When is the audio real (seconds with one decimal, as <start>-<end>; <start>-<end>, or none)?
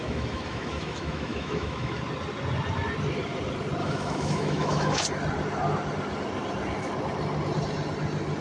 2.0-3.8; 5.0-8.4